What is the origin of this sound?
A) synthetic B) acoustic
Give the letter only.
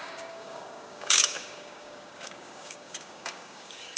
A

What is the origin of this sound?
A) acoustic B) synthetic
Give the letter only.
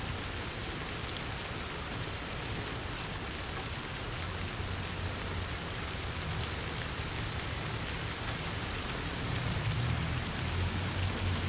A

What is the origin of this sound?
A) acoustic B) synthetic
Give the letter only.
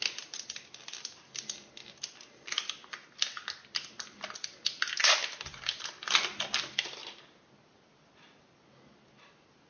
A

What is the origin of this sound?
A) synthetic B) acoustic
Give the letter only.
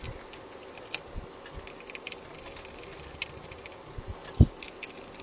B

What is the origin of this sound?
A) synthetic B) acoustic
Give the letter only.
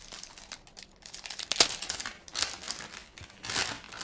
B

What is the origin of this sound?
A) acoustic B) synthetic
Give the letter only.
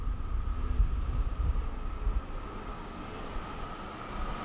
A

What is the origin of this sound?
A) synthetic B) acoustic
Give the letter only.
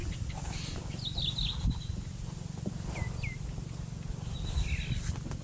B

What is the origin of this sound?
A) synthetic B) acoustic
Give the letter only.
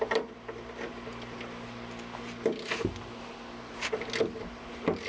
B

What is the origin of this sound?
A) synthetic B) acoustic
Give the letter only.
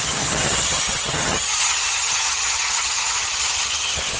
A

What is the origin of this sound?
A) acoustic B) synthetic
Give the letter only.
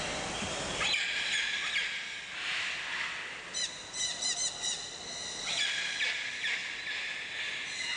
A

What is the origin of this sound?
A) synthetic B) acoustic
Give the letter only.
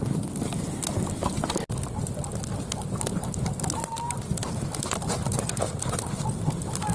B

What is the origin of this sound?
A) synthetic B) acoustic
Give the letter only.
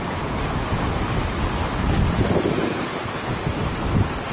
B